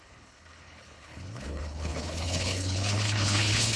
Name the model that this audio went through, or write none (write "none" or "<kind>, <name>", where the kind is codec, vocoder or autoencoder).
codec, HILCodec